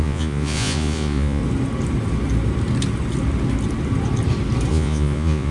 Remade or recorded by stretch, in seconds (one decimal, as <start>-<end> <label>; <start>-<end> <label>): 0.0-1.4 remade; 1.4-4.7 recorded; 4.7-5.5 remade